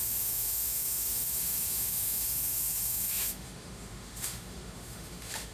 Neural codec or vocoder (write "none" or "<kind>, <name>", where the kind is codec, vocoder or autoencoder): autoencoder, DAC-VAE